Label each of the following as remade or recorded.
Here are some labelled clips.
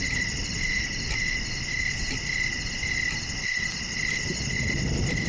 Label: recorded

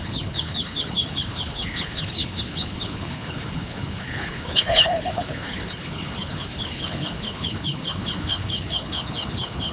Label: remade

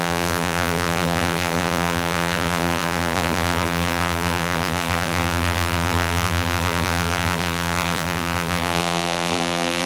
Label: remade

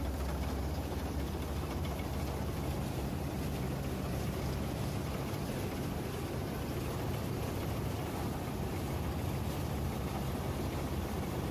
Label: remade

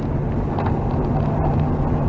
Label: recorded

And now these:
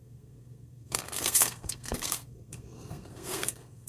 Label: remade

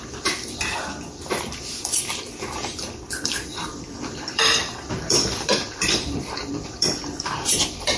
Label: remade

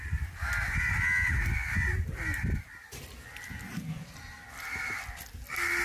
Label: recorded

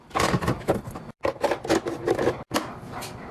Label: recorded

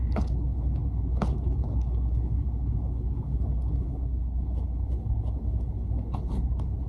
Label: remade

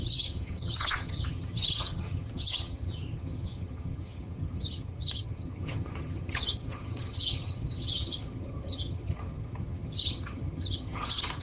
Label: remade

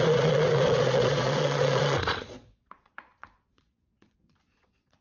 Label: remade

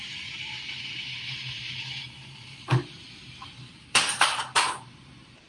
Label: remade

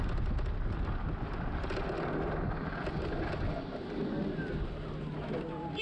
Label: recorded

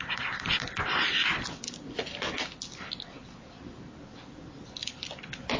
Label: recorded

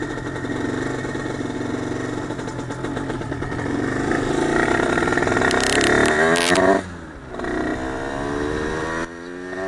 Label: recorded